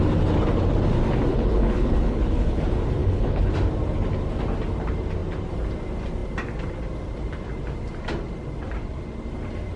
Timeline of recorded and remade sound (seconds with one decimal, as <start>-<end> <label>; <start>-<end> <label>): 0.0-1.3 recorded; 1.3-2.6 remade; 2.6-3.0 recorded; 3.0-3.5 remade; 3.5-9.8 recorded